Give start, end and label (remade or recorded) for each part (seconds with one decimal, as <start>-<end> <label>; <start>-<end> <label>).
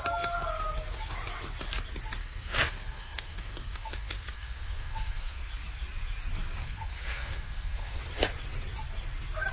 0.0-2.2 recorded; 2.2-5.4 remade; 5.4-6.6 recorded; 6.6-8.0 remade; 8.0-9.5 recorded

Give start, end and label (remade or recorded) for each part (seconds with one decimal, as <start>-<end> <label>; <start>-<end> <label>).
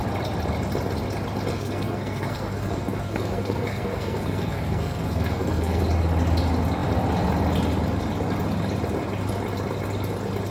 0.0-1.5 recorded; 1.5-5.8 remade; 5.8-10.5 recorded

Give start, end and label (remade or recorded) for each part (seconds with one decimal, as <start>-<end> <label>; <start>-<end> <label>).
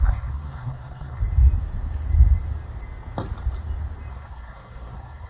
0.0-1.2 remade; 1.2-4.1 recorded; 4.1-5.3 remade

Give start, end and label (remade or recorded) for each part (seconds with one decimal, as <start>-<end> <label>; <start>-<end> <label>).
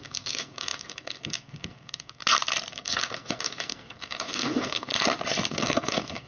0.0-2.2 remade; 2.2-2.7 recorded; 2.7-4.9 remade; 4.9-5.5 recorded; 5.5-6.3 remade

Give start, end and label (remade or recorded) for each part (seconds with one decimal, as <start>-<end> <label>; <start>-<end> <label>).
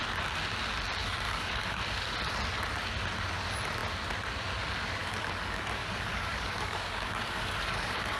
0.0-1.0 recorded; 1.0-2.1 remade; 2.1-5.0 recorded; 5.0-8.2 remade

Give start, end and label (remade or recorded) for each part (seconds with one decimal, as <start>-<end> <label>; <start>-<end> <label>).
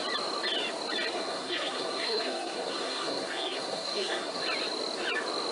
0.0-1.1 recorded; 1.1-4.4 remade; 4.4-5.5 recorded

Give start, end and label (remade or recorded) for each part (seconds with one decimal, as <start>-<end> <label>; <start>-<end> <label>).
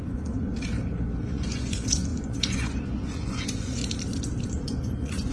0.0-0.5 remade; 0.5-1.2 recorded; 1.2-3.8 remade; 3.8-4.4 recorded; 4.4-5.3 remade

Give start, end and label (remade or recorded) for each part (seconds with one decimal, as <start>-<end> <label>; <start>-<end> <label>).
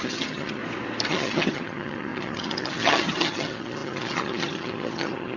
0.0-0.6 remade; 0.6-1.1 recorded; 1.1-5.4 remade